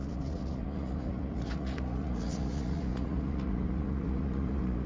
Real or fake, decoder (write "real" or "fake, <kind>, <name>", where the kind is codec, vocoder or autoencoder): fake, vocoder, Vocos